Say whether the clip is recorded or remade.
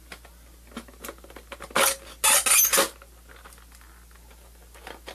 recorded